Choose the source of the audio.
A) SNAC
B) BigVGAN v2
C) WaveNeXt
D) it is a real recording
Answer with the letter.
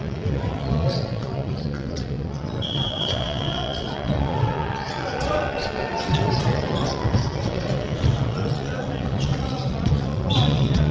C